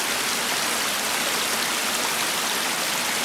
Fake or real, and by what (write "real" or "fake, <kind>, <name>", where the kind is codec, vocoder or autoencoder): real